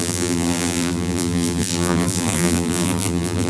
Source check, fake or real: fake